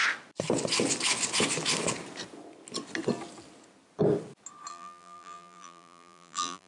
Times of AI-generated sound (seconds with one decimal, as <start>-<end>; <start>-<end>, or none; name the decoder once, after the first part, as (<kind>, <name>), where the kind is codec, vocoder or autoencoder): 4.7-6.7 (vocoder, BigVGAN v2)

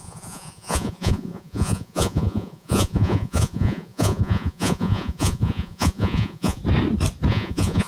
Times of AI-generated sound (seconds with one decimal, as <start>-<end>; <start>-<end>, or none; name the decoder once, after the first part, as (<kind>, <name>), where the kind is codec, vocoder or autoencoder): 0.0-6.6 (vocoder, Vocos); 7.3-7.9

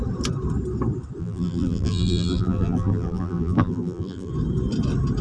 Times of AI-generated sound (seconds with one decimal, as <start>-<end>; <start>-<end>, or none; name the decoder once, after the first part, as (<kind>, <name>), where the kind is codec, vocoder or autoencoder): 1.2-4.3 (vocoder, BigVGAN v2)

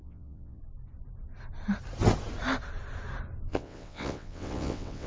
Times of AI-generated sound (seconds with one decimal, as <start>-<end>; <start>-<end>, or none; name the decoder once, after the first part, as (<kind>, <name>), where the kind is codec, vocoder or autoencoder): 0.0-0.6 (vocoder, WaveNeXt); 3.5-5.1

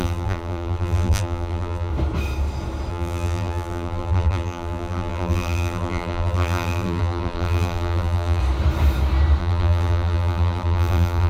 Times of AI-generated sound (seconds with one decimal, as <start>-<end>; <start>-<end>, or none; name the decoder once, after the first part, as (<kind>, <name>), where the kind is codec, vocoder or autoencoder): 0.0-1.9 (vocoder, BigVGAN v2); 2.9-8.4; 9.4-11.3